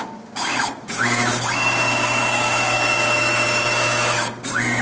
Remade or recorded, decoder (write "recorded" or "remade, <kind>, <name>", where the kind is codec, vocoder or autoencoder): remade, codec, DAC